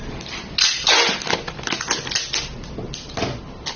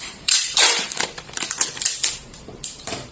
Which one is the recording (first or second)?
first